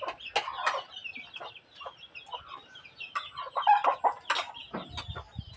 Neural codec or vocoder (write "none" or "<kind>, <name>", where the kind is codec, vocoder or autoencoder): none